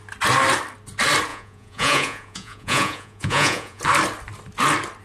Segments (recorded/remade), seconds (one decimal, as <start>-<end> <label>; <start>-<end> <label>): 0.0-1.3 recorded; 1.3-3.8 remade; 3.8-5.0 recorded